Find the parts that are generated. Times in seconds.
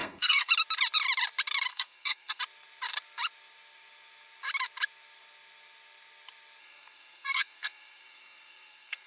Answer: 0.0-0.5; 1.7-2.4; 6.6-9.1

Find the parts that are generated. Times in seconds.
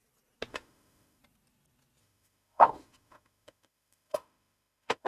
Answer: 0.5-1.2; 2.0-5.1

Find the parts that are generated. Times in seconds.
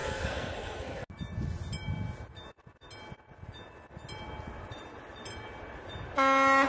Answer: 0.0-1.1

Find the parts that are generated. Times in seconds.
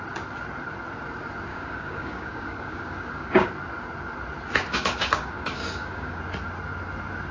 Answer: 1.5-3.5; 4.6-6.2